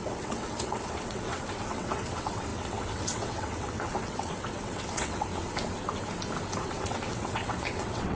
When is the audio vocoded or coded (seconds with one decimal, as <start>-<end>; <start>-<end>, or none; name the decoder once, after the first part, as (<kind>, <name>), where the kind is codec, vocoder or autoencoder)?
0.0-5.3 (vocoder, WaveNeXt); 6.6-8.2